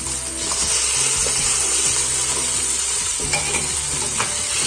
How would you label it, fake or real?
real